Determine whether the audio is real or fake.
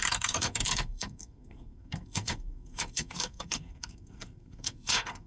fake